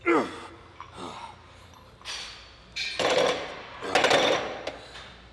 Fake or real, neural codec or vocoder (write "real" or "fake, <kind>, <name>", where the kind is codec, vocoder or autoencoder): real